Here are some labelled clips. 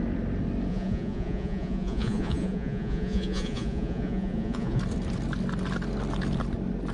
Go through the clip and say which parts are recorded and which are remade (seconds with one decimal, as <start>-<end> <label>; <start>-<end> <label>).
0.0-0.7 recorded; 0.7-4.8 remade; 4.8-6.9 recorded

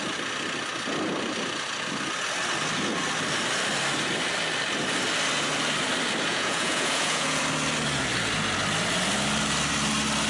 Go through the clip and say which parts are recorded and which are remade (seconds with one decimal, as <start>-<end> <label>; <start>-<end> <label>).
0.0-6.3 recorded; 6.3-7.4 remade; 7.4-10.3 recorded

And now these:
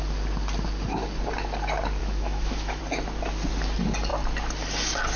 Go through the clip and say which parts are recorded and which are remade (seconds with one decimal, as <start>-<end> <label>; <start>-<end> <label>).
0.0-2.0 recorded; 2.0-2.8 remade; 2.8-5.2 recorded